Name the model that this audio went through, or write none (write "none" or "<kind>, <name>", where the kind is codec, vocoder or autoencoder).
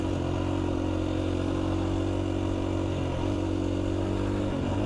none